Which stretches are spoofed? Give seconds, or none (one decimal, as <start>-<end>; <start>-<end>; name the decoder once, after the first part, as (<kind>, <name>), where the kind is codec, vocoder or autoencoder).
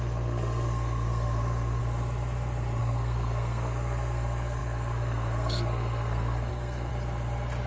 0.0-1.8 (codec, SNAC); 2.8-6.9